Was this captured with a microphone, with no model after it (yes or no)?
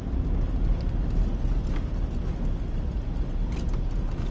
yes